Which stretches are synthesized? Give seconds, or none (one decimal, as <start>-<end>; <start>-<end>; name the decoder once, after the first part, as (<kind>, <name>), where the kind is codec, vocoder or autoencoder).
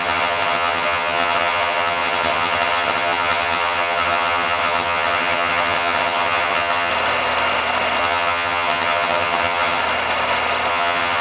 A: 0.0-6.9 (vocoder, HiFi-GAN); 8.0-9.8; 10.7-11.2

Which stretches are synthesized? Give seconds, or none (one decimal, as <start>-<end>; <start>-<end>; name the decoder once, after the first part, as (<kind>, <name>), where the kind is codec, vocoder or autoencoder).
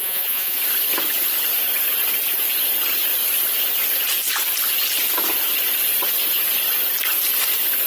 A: 0.0-0.6 (vocoder, Vocos)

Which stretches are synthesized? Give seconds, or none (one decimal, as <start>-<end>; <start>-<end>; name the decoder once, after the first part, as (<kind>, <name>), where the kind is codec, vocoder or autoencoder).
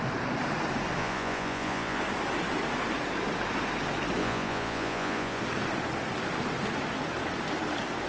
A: 1.0-2.0 (vocoder, Vocos); 4.2-5.4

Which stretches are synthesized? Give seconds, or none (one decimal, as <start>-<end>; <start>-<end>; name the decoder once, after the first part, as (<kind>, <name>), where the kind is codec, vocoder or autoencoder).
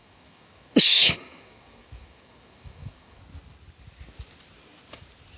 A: 0.0-3.2 (autoencoder, DAC-VAE)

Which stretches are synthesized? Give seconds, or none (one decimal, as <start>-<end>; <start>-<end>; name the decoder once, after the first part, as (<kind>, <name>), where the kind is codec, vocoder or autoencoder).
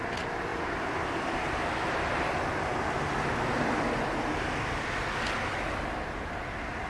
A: 0.5-1.4 (vocoder, BigVGAN v2); 2.7-6.4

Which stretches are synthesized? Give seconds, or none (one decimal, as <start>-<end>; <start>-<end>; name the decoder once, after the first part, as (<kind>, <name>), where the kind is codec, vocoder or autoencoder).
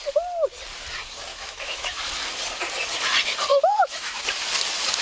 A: 1.3-2.0 (autoencoder, DAC-VAE); 3.5-4.2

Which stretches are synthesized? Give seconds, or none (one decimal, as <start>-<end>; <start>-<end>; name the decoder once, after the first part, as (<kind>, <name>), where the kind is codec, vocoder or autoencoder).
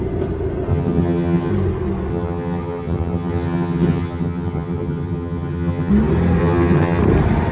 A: 0.7-1.5 (vocoder, HiFi-GAN); 2.1-5.9; 6.4-7.0